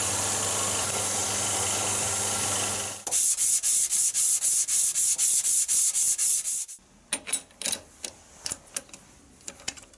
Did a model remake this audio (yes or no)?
no